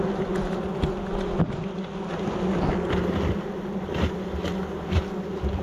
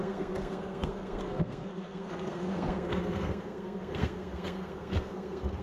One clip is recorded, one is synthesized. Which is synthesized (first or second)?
second